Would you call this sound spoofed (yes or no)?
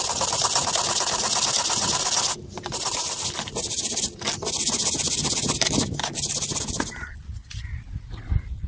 no